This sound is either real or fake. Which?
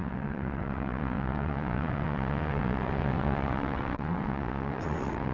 fake